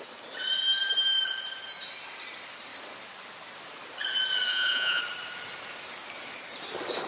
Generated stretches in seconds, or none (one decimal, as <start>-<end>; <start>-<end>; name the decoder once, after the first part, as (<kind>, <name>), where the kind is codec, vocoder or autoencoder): 4.5-5.0 (vocoder, Vocos)